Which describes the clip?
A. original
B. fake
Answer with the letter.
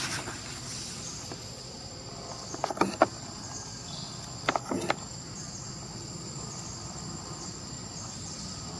A